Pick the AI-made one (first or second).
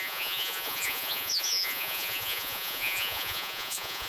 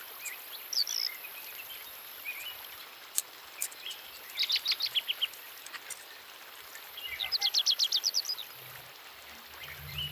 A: first